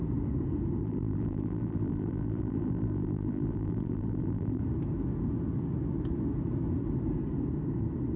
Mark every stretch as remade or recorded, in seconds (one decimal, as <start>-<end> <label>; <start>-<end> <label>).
0.0-0.8 recorded; 0.8-4.6 remade; 4.6-8.2 recorded